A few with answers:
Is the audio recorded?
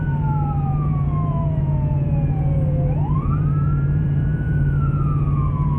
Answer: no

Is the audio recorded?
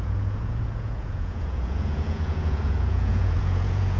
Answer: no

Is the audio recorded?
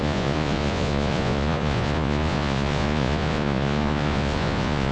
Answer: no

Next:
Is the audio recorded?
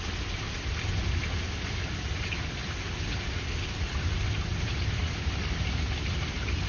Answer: yes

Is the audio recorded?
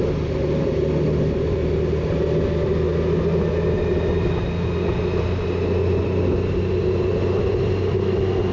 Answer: yes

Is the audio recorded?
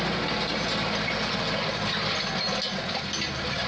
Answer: yes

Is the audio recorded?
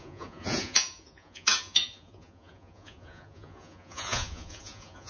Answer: no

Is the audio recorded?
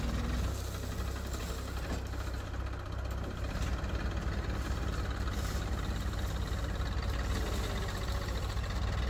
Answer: yes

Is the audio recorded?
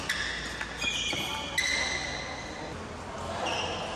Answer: yes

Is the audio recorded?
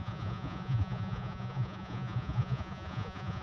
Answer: no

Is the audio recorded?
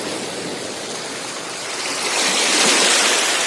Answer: yes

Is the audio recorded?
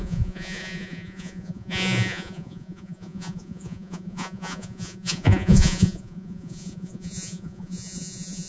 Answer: no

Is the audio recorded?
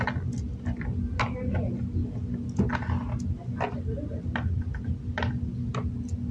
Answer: yes